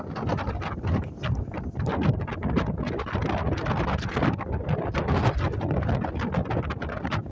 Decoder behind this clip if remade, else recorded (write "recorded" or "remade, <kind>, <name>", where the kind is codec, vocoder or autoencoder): recorded